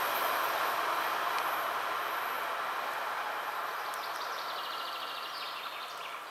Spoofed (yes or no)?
no